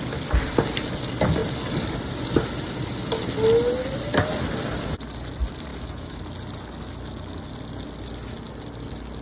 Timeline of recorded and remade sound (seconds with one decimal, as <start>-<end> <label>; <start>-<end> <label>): 0.0-5.7 recorded; 5.7-6.2 remade; 6.2-9.2 recorded